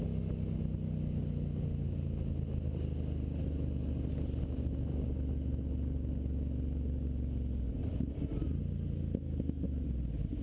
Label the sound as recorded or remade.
recorded